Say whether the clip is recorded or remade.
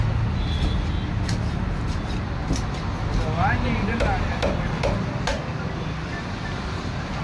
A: recorded